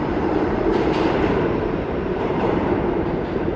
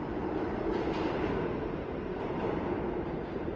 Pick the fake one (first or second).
first